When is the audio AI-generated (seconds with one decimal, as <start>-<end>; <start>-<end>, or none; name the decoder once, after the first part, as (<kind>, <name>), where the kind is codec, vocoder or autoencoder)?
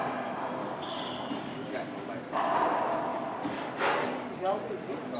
0.6-2.1 (codec, DAC); 3.1-4.6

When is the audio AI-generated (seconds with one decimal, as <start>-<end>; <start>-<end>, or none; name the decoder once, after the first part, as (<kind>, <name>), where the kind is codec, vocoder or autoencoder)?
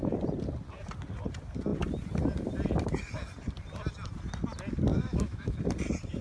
4.9-5.6 (autoencoder, DAC-VAE)